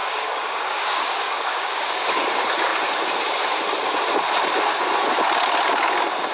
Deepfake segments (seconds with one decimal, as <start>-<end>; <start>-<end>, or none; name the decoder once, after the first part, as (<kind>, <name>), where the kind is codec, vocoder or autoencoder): 0.0-2.2 (codec, DAC)